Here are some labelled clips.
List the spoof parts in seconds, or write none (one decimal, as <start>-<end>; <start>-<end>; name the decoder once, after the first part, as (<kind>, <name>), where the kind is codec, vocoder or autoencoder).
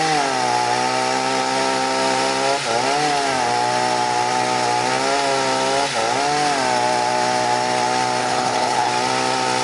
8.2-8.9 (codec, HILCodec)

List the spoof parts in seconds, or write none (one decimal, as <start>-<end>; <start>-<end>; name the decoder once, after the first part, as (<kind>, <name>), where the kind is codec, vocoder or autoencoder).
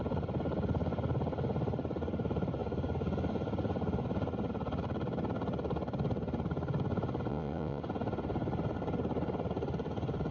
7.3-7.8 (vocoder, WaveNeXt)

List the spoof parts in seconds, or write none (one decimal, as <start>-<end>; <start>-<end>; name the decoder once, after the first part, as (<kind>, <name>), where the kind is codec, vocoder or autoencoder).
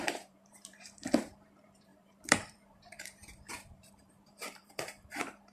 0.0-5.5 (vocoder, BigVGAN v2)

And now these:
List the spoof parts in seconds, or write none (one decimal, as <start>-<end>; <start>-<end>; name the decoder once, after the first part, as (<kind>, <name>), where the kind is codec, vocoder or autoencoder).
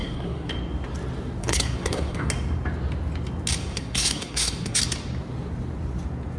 0.0-0.5 (codec, SNAC); 1.4-2.3; 3.6-4.8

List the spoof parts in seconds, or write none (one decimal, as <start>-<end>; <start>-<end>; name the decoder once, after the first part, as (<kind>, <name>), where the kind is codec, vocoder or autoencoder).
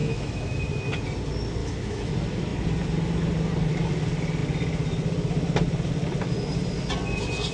0.0-0.6 (autoencoder, DAC-VAE); 1.6-2.1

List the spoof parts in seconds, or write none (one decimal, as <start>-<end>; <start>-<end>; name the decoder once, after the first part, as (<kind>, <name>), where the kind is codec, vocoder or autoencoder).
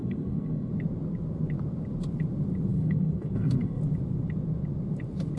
0.0-0.7 (codec, SNAC); 2.7-3.8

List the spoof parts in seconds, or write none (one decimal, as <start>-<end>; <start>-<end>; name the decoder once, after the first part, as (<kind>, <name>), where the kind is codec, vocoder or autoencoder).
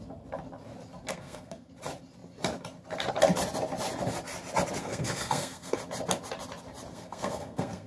1.1-1.7 (codec, SNAC); 4.8-5.8; 6.9-7.9